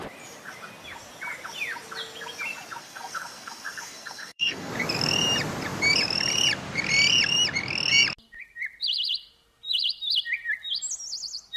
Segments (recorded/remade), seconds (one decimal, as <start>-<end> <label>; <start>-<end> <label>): 0.0-2.8 recorded; 2.8-4.7 remade; 4.7-11.6 recorded